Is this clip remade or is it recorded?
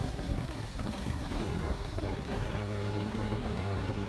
remade